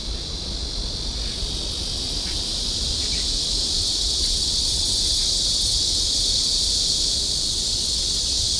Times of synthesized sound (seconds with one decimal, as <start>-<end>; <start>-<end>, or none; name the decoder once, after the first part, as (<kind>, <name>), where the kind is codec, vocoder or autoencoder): 3.8-6.5 (vocoder, WaveNeXt); 7.5-8.6